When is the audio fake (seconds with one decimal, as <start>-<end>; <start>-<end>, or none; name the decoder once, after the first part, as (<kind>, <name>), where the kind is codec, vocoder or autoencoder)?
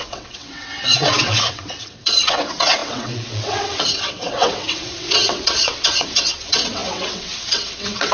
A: 0.0-8.1 (vocoder, WaveNeXt)